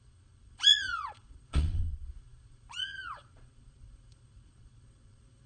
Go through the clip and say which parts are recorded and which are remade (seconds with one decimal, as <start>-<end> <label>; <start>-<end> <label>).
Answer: 0.0-5.5 remade